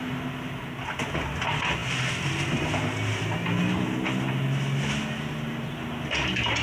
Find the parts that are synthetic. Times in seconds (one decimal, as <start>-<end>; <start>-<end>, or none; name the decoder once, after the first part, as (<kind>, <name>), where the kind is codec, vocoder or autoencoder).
1.8-2.6 (vocoder, BigVGAN v2)